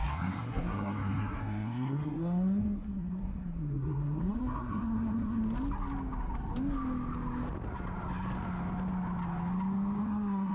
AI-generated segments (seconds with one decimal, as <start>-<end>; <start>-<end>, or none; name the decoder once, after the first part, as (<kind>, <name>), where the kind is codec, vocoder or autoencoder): 0.0-5.4 (codec, SNAC); 10.0-10.5